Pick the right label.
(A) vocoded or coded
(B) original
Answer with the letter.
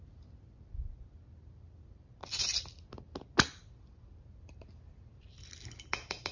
B